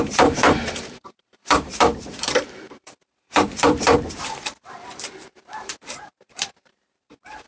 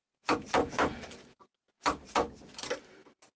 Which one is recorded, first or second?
second